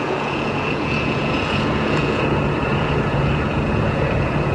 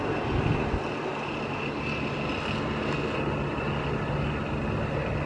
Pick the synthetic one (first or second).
first